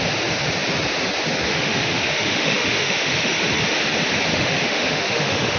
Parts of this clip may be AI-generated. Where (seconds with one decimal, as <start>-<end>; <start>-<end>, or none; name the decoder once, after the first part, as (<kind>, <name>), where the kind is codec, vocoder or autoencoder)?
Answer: 1.5-3.4 (autoencoder, DAC-VAE); 4.3-5.6